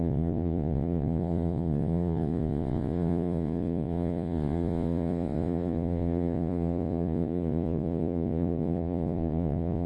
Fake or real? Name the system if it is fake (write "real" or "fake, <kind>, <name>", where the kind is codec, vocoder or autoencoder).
fake, vocoder, Vocos